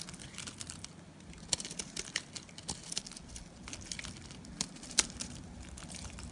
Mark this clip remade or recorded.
recorded